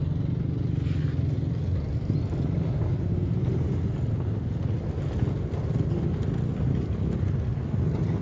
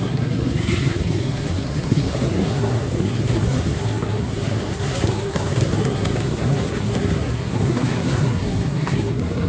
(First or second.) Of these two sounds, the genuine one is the first